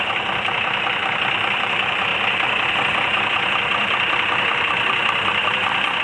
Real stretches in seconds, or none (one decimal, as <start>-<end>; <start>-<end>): 2.1-2.7